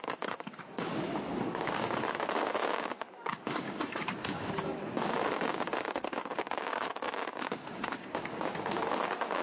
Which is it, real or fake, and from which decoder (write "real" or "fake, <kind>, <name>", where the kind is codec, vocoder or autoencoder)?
fake, codec, DAC